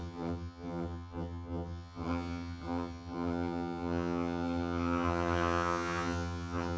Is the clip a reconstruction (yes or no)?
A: yes